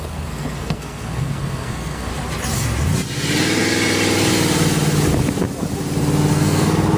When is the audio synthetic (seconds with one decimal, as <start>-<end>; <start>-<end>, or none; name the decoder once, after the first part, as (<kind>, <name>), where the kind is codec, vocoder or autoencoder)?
0.0-2.1 (codec, SNAC); 6.3-7.0